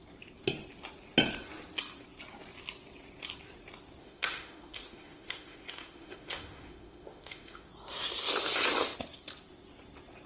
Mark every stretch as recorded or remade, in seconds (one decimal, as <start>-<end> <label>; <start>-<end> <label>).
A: 0.0-4.0 recorded; 4.0-7.7 remade; 7.7-10.3 recorded